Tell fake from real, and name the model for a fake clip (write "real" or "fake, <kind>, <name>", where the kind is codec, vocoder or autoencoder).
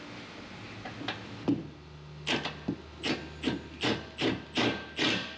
real